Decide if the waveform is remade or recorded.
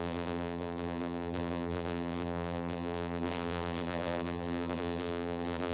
remade